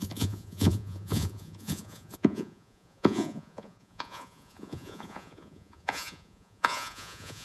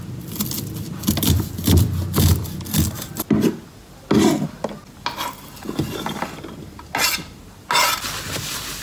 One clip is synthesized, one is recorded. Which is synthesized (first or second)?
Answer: first